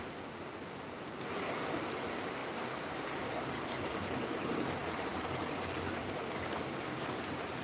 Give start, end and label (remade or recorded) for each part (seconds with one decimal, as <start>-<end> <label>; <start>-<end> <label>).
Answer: 0.0-2.4 recorded; 2.4-3.7 remade; 3.7-4.8 recorded; 4.8-5.4 remade; 5.4-6.0 recorded; 6.0-7.6 remade